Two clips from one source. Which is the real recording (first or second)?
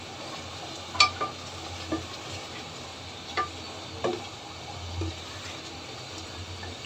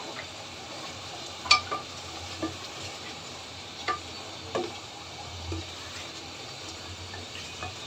first